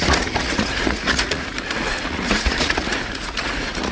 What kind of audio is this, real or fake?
fake